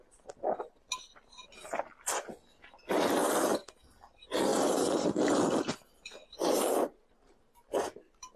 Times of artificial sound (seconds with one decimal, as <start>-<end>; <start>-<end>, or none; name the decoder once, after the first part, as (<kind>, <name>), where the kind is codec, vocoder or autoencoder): none